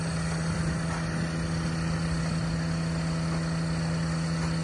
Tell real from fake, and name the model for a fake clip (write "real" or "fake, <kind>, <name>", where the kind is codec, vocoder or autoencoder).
real